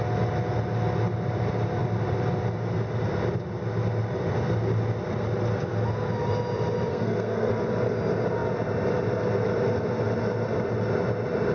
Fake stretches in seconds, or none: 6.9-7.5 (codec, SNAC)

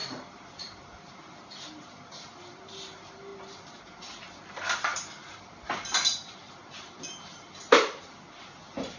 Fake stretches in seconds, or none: 0.0-0.8 (vocoder, BigVGAN v2); 4.9-5.5

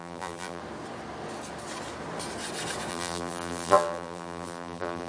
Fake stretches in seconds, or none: 0.0-0.6 (vocoder, BigVGAN v2); 2.9-5.1

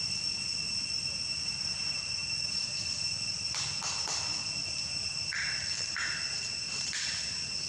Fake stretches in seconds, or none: none